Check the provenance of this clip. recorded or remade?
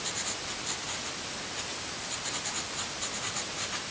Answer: recorded